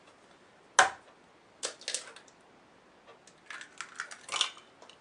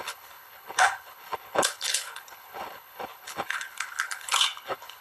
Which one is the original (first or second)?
first